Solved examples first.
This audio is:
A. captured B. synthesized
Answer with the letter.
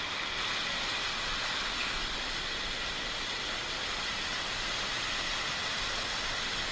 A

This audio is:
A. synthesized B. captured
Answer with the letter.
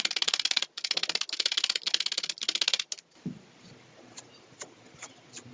B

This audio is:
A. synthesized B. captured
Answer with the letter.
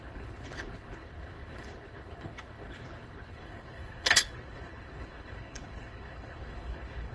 A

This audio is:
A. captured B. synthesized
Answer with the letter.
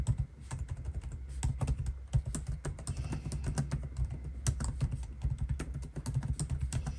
A